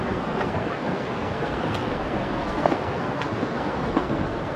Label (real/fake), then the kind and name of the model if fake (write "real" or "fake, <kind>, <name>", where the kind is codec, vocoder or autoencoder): fake, codec, SNAC